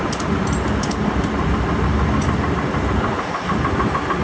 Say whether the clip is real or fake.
real